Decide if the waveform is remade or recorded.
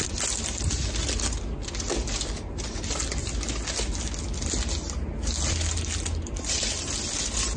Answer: recorded